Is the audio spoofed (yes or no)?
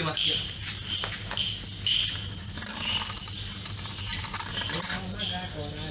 no